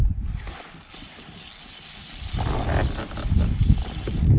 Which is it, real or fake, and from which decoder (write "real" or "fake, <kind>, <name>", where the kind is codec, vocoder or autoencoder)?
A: real